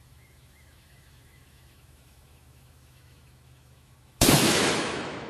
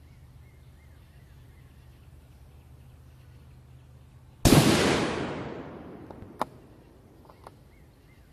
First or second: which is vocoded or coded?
first